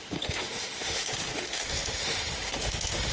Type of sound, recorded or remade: remade